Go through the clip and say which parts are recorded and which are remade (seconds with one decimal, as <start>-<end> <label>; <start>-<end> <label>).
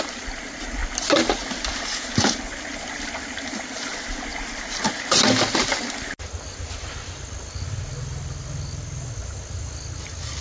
0.0-10.4 recorded